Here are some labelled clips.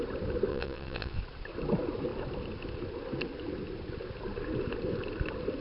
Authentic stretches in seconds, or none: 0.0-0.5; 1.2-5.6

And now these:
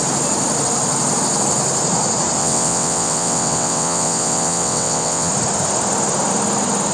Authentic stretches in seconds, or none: 0.0-2.4; 5.3-6.9

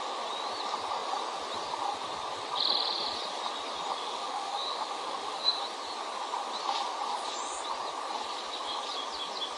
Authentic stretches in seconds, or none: 0.0-4.0; 5.6-9.6

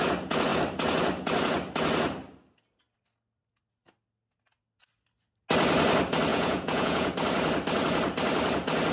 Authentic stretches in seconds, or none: 0.0-6.3; 7.1-8.9

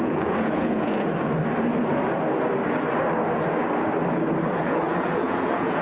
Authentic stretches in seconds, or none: 1.1-4.6

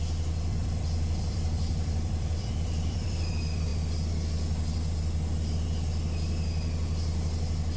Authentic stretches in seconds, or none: 0.0-0.5; 3.3-7.8

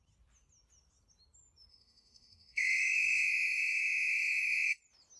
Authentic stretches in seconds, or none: 0.0-1.7; 4.8-5.2

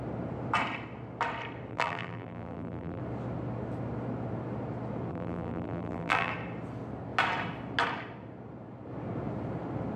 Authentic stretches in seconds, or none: 0.0-1.7; 3.0-5.1; 6.3-10.0